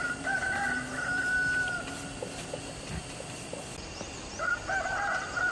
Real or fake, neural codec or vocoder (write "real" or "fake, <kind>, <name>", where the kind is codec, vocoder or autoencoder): real